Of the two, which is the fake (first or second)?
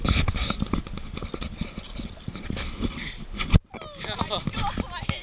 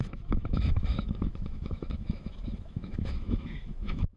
second